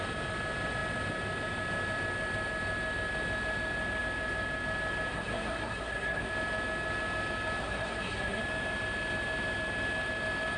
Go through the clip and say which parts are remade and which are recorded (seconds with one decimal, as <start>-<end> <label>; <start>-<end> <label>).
0.0-5.1 recorded; 5.1-6.3 remade; 6.3-7.6 recorded; 7.6-8.4 remade; 8.4-10.6 recorded

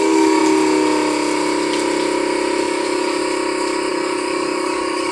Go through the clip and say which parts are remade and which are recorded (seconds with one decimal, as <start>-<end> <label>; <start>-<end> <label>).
0.0-0.4 remade; 0.4-2.6 recorded; 2.6-3.2 remade; 3.2-3.9 recorded; 3.9-5.1 remade

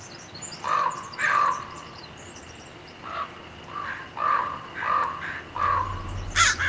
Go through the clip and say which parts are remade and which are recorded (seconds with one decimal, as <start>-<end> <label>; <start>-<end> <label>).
0.0-6.7 recorded

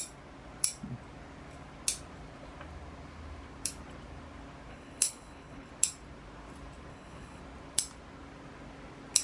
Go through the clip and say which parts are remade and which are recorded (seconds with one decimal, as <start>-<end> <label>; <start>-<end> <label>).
0.0-4.7 recorded; 4.7-5.7 remade; 5.7-6.9 recorded; 6.9-7.4 remade; 7.4-9.2 recorded

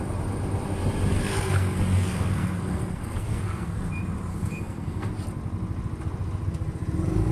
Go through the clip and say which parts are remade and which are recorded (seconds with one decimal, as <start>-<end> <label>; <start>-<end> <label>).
0.0-1.1 recorded; 1.1-3.9 remade; 3.9-4.3 recorded; 4.3-5.1 remade; 5.1-7.3 recorded

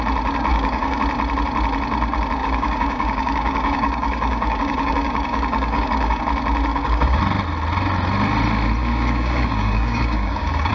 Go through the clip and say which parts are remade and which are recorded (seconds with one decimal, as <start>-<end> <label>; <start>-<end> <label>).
0.0-0.5 recorded; 0.5-1.0 remade; 1.0-2.4 recorded; 2.4-6.2 remade; 6.2-6.7 recorded; 6.7-7.2 remade; 7.2-8.8 recorded; 8.8-10.7 remade

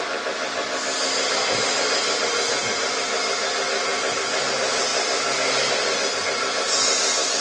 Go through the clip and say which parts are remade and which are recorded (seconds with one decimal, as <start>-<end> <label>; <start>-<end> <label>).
0.0-7.4 recorded